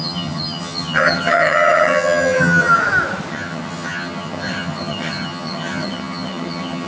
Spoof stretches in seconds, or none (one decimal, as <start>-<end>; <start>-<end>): 0.0-2.8; 3.3-6.9